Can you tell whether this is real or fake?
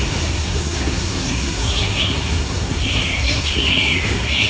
fake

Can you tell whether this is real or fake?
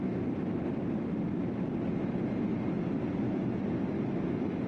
real